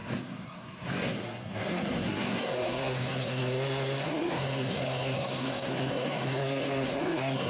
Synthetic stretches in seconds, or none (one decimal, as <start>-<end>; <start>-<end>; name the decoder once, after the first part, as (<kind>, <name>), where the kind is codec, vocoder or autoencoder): 0.0-7.5 (codec, SNAC)